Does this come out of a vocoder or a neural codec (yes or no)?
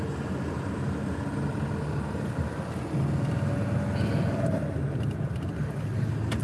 no